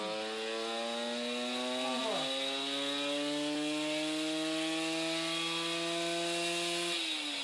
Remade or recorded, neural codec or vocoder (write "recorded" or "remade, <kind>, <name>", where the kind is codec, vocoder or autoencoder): recorded